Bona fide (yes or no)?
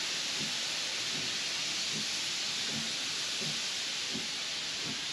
yes